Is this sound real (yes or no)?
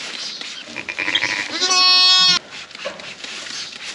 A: yes